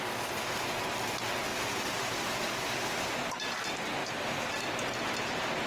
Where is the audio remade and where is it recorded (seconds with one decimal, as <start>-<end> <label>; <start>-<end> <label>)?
0.0-5.7 recorded